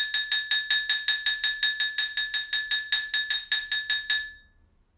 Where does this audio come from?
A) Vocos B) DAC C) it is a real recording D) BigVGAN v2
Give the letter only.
C